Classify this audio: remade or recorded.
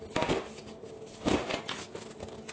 recorded